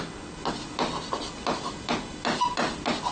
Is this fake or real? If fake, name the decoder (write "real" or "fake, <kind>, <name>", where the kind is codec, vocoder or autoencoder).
real